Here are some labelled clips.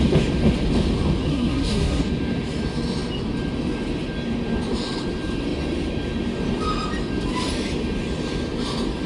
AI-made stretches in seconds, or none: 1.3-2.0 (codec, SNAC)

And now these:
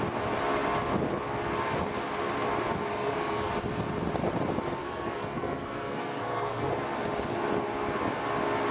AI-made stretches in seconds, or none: 2.9-3.5 (codec, SNAC); 4.8-6.7

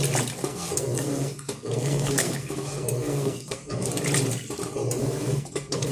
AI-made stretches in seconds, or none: 0.4-3.9 (codec, SNAC); 5.0-5.9

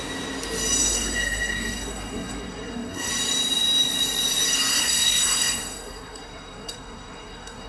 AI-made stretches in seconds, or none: 0.8-3.1 (codec, SNAC); 4.7-7.7

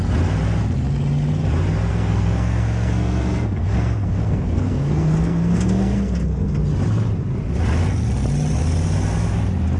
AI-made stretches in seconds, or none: 1.9-6.6 (codec, SNAC)

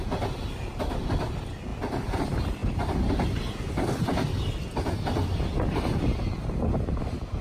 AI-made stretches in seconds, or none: none